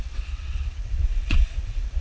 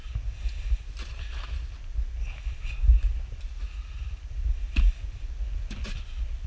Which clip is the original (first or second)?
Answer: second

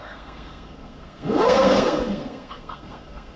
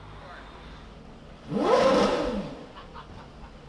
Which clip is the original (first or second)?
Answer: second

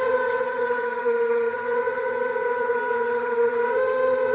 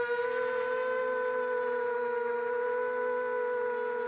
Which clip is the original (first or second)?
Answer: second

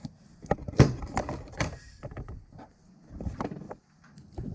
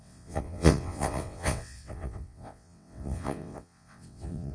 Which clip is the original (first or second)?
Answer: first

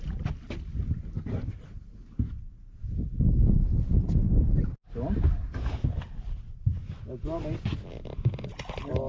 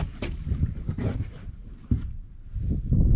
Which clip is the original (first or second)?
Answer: first